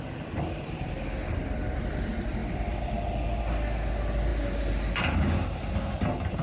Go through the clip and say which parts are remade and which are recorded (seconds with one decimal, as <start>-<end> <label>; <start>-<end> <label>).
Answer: 0.0-6.4 recorded